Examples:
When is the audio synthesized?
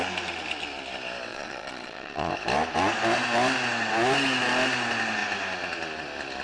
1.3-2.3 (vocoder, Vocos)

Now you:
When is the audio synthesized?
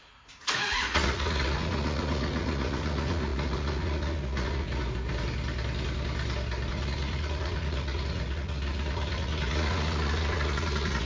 0.0-4.8 (vocoder, Vocos); 6.7-11.1